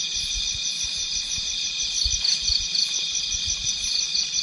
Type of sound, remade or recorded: recorded